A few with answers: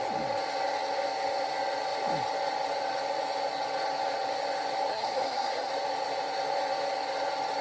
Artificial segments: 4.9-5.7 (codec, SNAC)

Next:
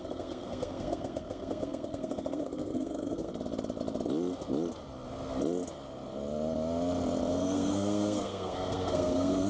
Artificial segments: 0.0-3.3 (codec, SNAC); 7.3-9.5

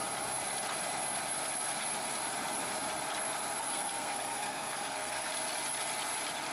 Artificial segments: 3.6-5.3 (codec, SNAC)